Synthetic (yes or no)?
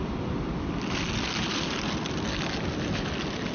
no